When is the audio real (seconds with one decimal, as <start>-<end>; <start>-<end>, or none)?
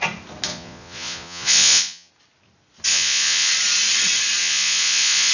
0.0-0.5; 2.1-2.9; 3.5-4.4